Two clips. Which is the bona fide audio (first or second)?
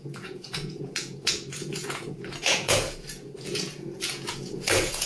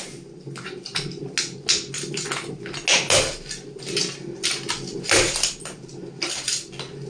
second